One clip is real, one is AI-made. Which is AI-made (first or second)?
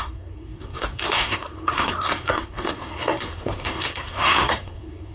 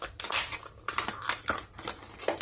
first